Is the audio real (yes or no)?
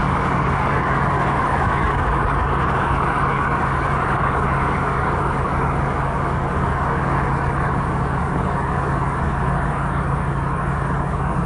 no